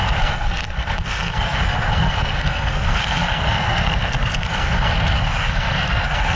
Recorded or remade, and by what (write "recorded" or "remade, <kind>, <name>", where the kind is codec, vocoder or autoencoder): remade, codec, SNAC